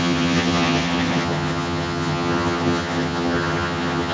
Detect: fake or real fake